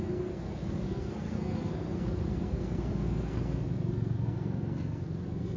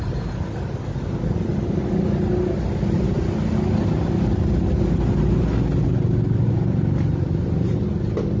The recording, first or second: second